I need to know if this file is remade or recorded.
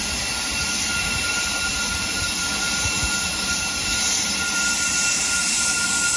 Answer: recorded